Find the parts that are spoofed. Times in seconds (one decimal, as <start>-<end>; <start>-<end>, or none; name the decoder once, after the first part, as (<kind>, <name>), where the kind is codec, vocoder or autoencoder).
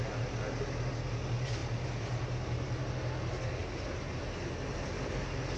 1.6-2.9 (vocoder, BigVGAN v2); 3.6-5.6